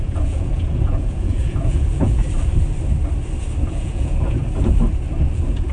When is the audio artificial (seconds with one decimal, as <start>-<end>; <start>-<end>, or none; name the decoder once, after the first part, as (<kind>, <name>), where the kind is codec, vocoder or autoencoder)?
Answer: 0.0-2.2 (vocoder, Vocos); 3.7-4.4; 5.2-5.7